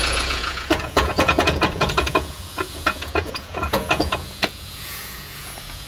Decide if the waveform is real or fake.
fake